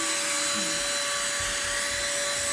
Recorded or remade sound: recorded